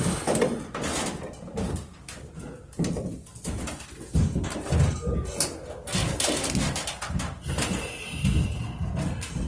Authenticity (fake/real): real